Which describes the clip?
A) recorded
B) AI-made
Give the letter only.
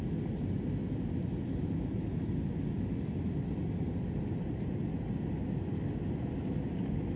A